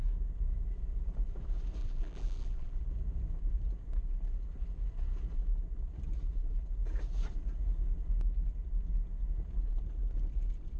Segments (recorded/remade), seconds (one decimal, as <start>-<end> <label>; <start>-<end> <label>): 0.0-1.8 recorded; 1.8-2.8 remade; 2.8-10.8 recorded